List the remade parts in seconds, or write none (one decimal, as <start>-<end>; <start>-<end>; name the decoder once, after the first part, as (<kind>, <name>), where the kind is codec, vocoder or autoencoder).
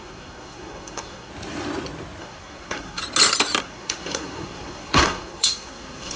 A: 0.0-1.3 (codec, SNAC); 2.2-3.0; 3.6-6.2